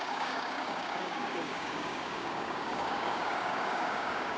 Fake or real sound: fake